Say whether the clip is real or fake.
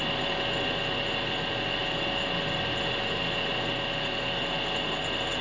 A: real